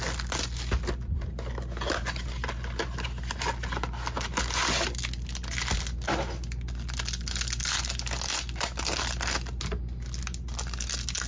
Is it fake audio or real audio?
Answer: real